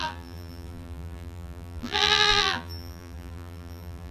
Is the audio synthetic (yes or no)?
yes